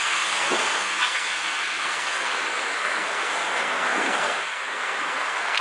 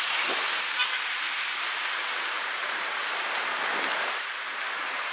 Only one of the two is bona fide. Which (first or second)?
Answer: second